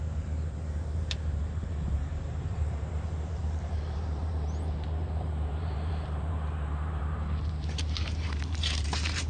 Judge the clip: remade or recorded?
remade